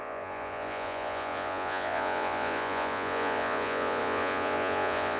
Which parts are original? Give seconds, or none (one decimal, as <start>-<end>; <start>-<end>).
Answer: none